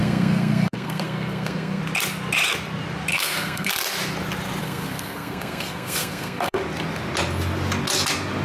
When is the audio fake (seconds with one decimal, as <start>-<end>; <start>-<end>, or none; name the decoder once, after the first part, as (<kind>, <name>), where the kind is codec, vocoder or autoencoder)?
0.0-1.8 (codec, SNAC); 3.1-3.7; 4.6-6.6